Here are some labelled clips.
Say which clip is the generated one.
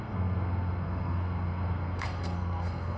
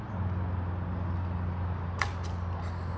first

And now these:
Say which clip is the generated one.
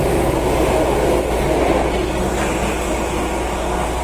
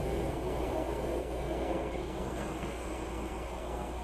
second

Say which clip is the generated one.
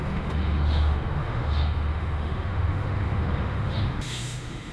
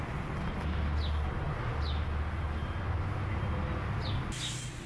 first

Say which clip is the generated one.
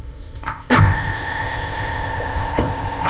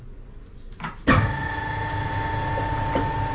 first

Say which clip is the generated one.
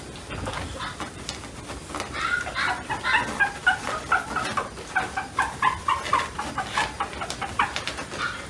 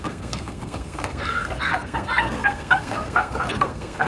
second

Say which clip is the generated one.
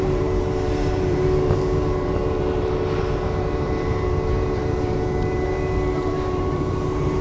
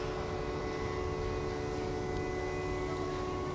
first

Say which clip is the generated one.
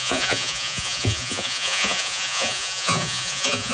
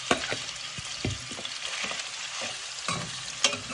first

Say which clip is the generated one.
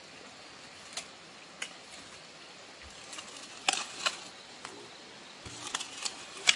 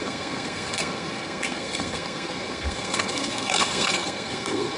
second